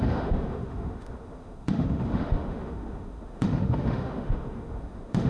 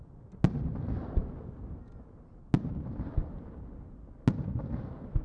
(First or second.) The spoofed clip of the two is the first